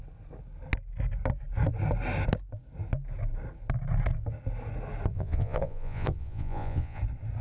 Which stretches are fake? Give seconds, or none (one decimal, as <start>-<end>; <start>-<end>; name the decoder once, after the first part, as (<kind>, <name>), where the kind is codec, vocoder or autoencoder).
5.1-7.0 (vocoder, Vocos)

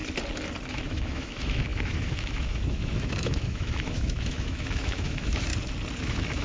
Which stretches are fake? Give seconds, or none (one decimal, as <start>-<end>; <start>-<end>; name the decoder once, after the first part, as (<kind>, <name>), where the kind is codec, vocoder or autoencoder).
0.7-5.5 (autoencoder, DAC-VAE); 6.0-6.4

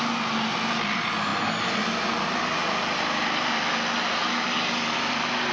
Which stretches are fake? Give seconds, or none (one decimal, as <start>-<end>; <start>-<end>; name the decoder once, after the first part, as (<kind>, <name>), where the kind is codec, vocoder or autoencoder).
none